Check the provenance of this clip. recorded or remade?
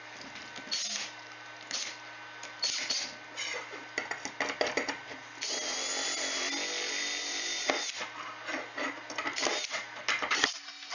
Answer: recorded